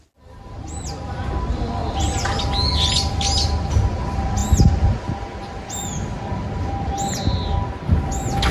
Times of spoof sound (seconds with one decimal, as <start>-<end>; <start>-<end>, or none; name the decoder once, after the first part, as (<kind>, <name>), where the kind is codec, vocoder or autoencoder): none